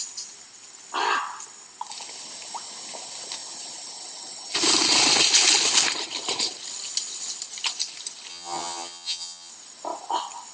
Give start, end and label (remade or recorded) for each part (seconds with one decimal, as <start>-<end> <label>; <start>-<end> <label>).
0.0-8.3 recorded; 8.3-9.5 remade; 9.5-10.5 recorded